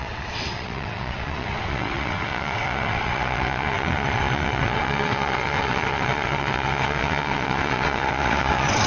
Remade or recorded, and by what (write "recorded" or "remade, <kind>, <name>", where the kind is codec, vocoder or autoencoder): remade, vocoder, WaveNeXt